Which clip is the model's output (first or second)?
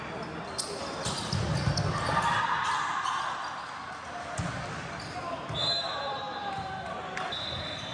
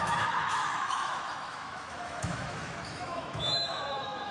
second